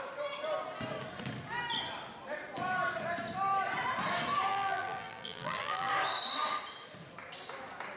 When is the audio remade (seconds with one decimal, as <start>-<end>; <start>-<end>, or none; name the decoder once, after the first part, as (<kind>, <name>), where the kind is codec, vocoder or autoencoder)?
4.5-5.9 (vocoder, BigVGAN v2)